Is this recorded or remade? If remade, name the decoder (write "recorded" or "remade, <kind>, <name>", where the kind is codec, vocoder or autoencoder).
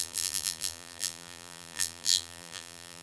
remade, vocoder, BigVGAN v2